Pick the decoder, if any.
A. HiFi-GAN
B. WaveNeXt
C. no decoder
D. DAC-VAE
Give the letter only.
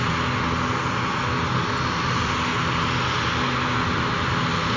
C